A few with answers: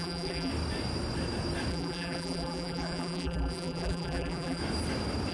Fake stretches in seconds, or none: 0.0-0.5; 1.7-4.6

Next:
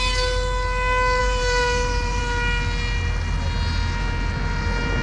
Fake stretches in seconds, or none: 1.2-2.2

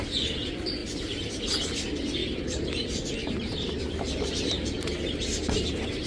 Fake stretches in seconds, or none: 0.8-1.3; 2.2-5.1